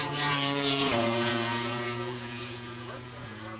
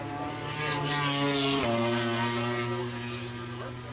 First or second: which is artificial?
first